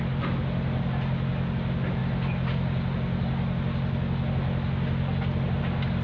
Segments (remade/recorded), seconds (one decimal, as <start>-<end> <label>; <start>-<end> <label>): 0.0-6.0 recorded

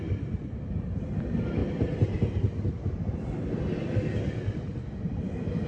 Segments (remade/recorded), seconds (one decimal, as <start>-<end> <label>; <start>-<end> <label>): 0.0-5.7 recorded

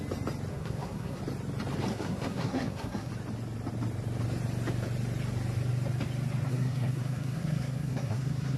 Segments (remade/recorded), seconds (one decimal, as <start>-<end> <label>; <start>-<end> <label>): 0.0-0.5 recorded; 0.5-1.2 remade; 1.2-1.9 recorded; 1.9-3.1 remade; 3.1-6.5 recorded; 6.5-8.6 remade

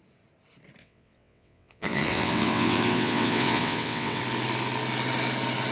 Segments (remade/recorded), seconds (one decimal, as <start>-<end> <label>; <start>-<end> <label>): 0.0-0.8 recorded; 0.8-4.2 remade; 4.2-5.7 recorded

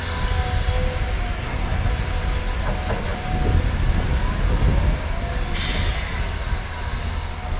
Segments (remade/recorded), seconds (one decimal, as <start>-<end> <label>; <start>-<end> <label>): 0.0-1.4 recorded; 1.4-1.9 remade; 1.9-7.6 recorded

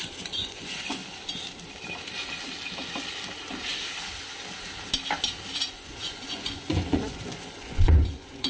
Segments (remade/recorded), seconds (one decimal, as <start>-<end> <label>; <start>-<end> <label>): 0.0-1.0 remade; 1.0-5.7 recorded; 5.7-8.5 remade

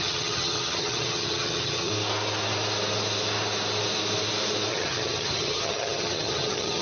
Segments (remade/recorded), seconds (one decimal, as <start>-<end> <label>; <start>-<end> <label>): 0.0-1.9 remade; 1.9-4.7 recorded; 4.7-6.8 remade

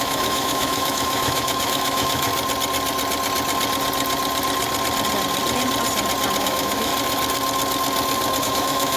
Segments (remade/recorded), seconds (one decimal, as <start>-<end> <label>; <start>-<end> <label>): 0.0-2.3 remade; 2.3-6.4 recorded; 6.4-6.9 remade; 6.9-8.4 recorded; 8.4-9.0 remade